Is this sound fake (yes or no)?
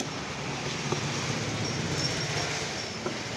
no